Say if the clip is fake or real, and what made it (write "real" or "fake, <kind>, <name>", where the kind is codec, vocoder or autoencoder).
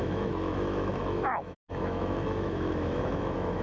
fake, autoencoder, DAC-VAE